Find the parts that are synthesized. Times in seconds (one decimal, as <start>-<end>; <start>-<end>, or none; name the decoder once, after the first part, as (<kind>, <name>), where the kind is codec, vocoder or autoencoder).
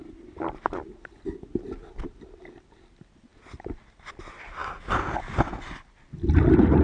none